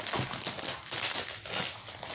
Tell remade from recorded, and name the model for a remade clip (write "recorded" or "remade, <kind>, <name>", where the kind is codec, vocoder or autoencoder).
recorded